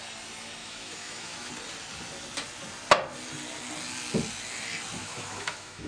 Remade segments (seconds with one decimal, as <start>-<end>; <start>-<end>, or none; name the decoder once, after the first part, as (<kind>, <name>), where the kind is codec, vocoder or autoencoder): 0.6-1.5 (autoencoder, DAC-VAE); 5.0-5.9